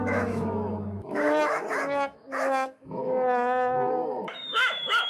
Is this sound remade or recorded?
remade